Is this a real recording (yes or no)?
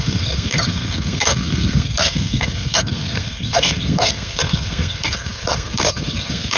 no